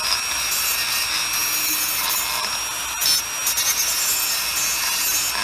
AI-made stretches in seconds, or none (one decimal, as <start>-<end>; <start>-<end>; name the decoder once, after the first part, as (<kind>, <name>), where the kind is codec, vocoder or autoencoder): none